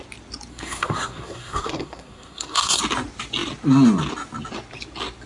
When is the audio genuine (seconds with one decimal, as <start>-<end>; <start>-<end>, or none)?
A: 0.0-0.5; 2.8-5.3